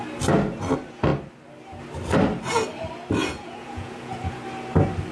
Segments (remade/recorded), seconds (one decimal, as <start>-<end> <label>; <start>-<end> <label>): 0.0-3.2 recorded; 3.2-4.4 remade; 4.4-5.1 recorded